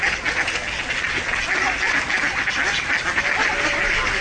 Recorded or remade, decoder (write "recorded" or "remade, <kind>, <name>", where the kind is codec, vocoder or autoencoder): recorded